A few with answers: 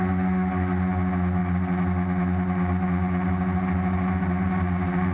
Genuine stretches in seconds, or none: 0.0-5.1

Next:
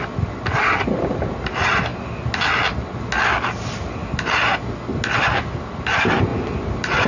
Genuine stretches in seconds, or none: 0.0-7.1

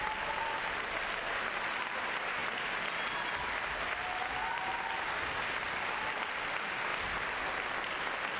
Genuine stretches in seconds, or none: 0.0-8.4

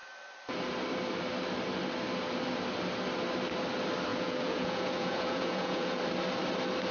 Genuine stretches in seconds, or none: 0.0-4.1; 6.0-6.9

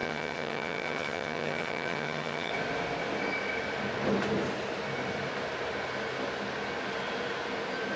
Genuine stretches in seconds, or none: 2.5-8.0

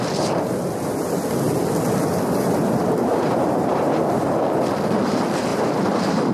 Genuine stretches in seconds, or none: 0.0-3.1; 3.9-5.5

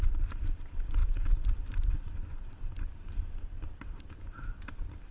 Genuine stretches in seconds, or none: 0.0-5.1

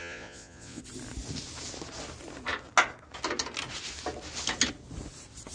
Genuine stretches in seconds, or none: 0.8-5.5